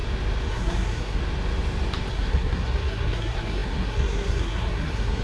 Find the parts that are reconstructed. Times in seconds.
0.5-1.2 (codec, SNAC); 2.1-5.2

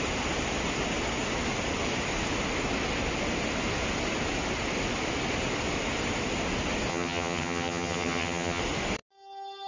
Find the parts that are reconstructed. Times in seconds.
6.9-8.6 (vocoder, HiFi-GAN)

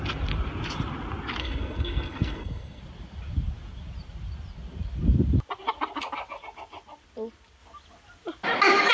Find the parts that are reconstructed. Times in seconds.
1.4-2.8 (codec, SNAC)

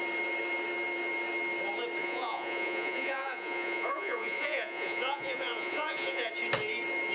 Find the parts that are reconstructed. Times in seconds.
2.0-6.3 (vocoder, Vocos)

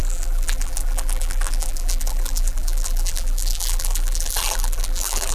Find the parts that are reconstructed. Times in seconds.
0.0-5.3 (vocoder, BigVGAN v2)

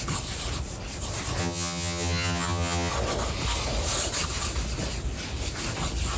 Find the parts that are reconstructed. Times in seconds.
1.4-2.9 (vocoder, HiFi-GAN)